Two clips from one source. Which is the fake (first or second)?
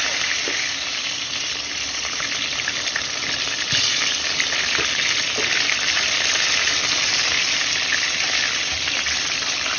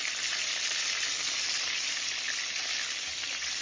first